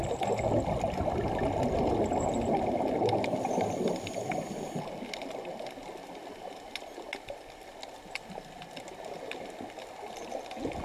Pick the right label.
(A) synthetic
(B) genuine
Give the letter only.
B